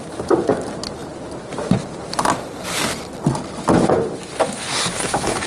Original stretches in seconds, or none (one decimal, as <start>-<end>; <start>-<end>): 0.0-1.0; 4.3-5.5